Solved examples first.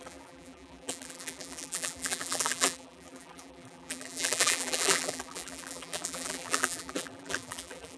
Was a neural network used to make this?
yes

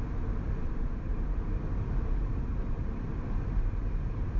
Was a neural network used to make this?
no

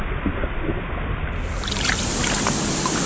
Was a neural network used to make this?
no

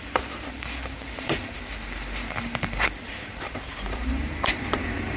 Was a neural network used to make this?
yes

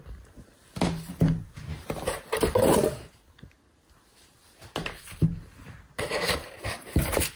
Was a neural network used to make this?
yes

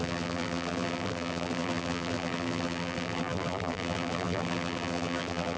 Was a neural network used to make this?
yes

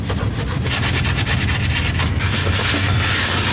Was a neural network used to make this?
no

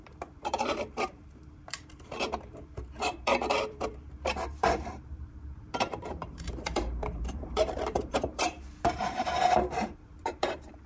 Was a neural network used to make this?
yes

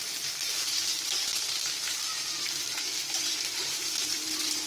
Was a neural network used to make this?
yes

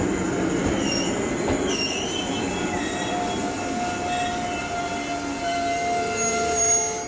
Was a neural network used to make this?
no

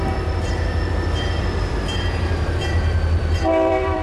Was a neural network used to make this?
yes